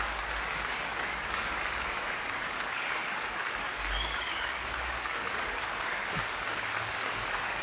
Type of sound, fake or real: fake